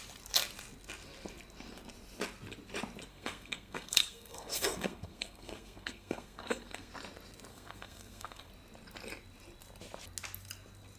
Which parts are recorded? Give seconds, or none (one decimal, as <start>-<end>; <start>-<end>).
0.0-3.1; 6.9-7.5; 8.5-11.0